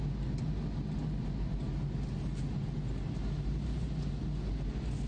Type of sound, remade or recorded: recorded